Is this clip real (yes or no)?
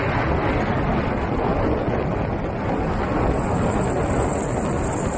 yes